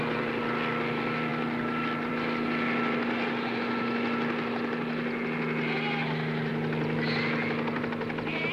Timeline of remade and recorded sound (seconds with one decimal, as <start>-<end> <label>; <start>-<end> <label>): 0.0-8.5 recorded